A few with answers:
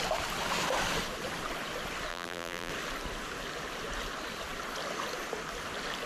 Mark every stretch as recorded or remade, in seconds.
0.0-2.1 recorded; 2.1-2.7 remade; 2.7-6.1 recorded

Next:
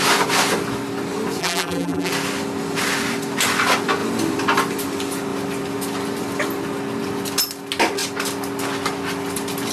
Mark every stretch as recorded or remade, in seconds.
0.0-1.4 recorded; 1.4-2.1 remade; 2.1-9.7 recorded

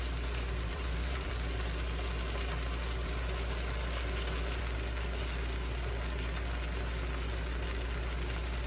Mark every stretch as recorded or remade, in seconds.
0.0-0.7 recorded; 0.7-1.3 remade; 1.3-8.7 recorded

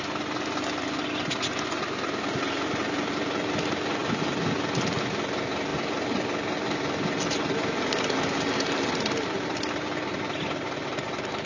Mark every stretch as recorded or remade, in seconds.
0.0-4.0 recorded; 4.0-4.6 remade; 4.6-5.7 recorded; 5.7-10.1 remade; 10.1-11.5 recorded

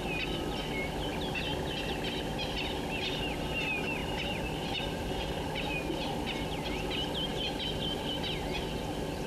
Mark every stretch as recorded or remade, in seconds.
0.0-4.0 recorded; 4.0-5.9 remade; 5.9-9.3 recorded

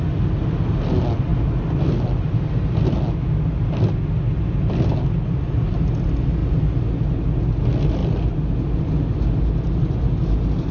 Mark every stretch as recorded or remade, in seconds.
0.0-10.7 recorded

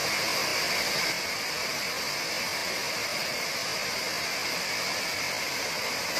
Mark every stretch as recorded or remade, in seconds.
0.0-0.5 recorded; 0.5-1.1 remade; 1.1-2.6 recorded; 2.6-6.2 remade

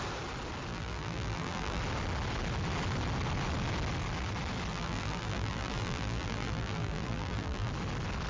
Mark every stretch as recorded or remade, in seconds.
0.0-0.7 recorded; 0.7-1.8 remade; 1.8-4.7 recorded; 4.7-7.7 remade; 7.7-8.3 recorded